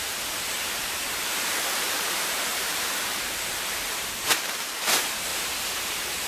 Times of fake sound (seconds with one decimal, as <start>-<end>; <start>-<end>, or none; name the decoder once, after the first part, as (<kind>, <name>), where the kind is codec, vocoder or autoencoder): 0.0-6.3 (vocoder, BigVGAN v2)